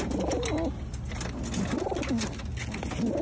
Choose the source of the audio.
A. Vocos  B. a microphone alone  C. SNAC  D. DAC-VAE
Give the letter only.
B